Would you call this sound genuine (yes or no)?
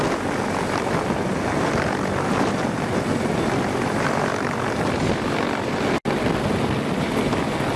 yes